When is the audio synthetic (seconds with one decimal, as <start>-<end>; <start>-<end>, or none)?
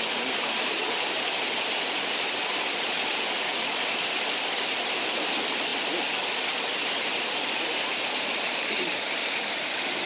none